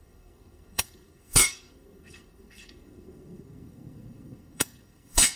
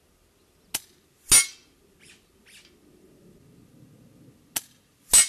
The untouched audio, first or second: second